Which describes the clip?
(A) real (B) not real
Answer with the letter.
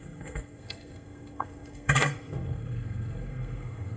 B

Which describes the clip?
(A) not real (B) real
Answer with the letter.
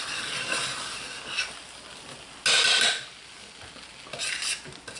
B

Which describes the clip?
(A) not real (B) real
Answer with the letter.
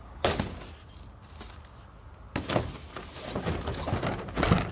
B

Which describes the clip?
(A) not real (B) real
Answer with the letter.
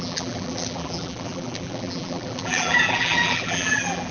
A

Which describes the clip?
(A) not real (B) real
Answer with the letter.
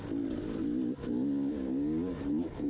B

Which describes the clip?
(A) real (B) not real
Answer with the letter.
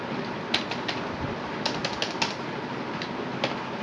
A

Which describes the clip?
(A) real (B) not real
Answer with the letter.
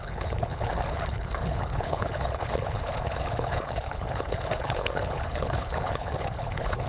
B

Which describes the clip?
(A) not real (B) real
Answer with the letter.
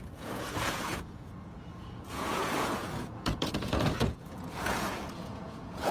A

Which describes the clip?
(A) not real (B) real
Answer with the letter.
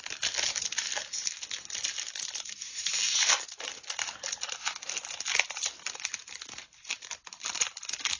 B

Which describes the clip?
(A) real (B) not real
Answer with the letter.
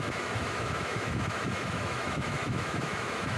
B